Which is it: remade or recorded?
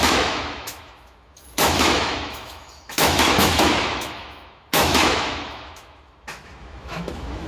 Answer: remade